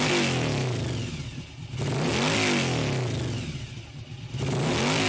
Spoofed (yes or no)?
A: no